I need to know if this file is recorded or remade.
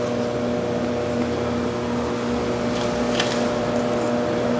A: recorded